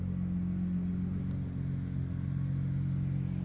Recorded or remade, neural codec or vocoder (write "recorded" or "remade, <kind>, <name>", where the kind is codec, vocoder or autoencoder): recorded